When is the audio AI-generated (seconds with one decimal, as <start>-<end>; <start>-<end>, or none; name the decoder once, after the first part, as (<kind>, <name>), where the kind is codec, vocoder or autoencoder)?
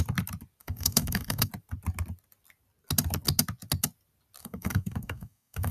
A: 0.6-1.5 (codec, DAC); 4.4-5.7